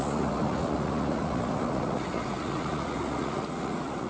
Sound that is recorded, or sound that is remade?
remade